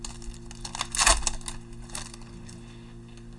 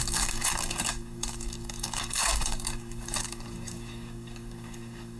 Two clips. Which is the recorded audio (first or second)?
first